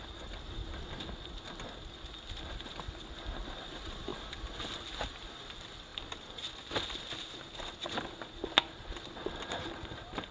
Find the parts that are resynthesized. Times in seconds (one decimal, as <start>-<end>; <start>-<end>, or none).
none